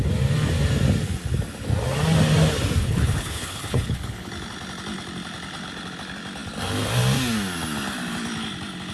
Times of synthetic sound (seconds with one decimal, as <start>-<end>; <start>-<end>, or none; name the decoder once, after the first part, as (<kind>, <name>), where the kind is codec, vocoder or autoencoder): 2.8-4.3 (codec, HILCodec)